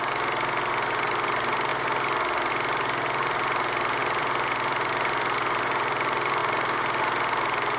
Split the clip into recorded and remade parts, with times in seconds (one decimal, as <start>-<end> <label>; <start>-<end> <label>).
0.0-7.8 recorded